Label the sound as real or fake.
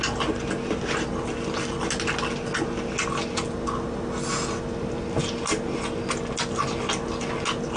real